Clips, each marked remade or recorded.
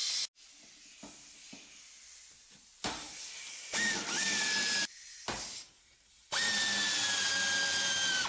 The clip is recorded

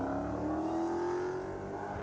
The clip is recorded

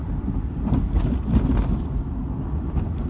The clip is recorded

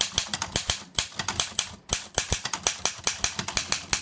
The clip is recorded